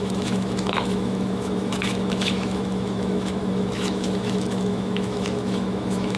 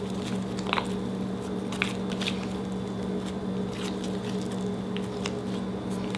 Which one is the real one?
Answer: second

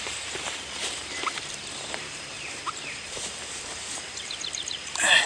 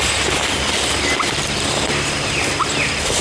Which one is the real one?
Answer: second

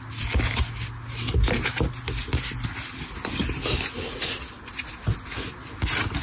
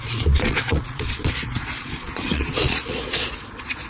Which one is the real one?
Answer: first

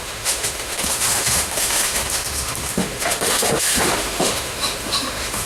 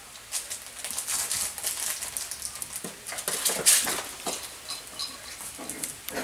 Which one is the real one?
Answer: second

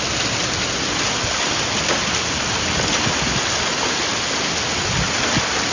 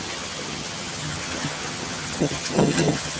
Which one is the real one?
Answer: first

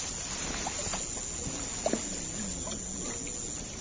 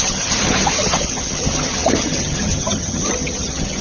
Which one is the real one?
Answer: first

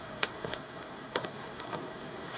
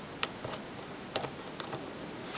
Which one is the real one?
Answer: second